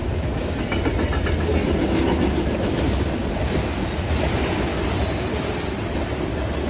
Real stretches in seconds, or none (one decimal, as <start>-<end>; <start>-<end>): 0.5-6.7